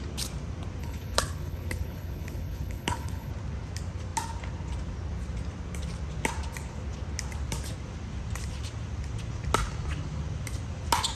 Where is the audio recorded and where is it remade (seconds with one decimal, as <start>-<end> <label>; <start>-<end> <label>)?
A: 0.0-0.8 recorded; 0.8-3.3 remade; 3.3-11.1 recorded